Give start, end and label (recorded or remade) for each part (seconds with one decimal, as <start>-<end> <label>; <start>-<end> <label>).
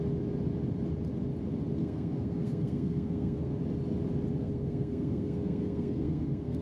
0.0-1.8 recorded; 1.8-3.6 remade; 3.6-4.4 recorded; 4.4-6.6 remade